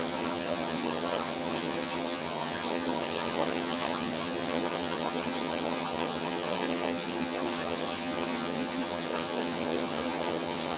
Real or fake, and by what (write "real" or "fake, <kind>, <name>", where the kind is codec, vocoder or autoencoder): fake, vocoder, HiFi-GAN